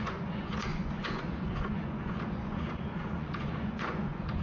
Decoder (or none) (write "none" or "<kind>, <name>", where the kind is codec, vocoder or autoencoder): vocoder, Vocos